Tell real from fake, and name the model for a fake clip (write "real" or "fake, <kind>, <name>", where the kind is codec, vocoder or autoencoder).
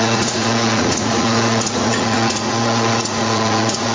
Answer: fake, vocoder, Vocos